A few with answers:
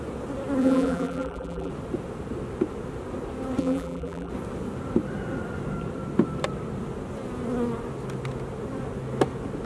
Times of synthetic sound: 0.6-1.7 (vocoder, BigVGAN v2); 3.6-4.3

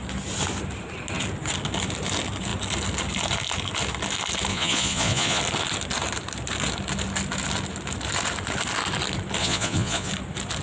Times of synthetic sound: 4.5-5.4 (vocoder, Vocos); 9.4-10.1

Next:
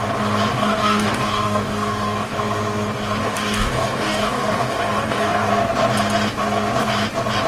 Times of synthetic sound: 0.5-2.3 (codec, DAC); 3.2-5.5